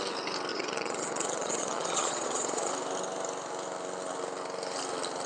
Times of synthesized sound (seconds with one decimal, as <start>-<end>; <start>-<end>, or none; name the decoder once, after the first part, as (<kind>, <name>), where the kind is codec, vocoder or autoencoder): 0.5-2.7 (vocoder, Vocos)